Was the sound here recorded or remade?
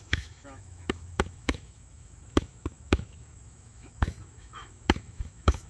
remade